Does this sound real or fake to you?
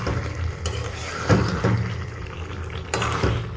real